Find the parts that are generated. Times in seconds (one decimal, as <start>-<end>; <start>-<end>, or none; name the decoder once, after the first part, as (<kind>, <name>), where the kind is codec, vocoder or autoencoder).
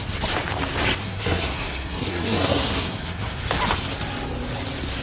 1.0-3.4 (codec, SNAC)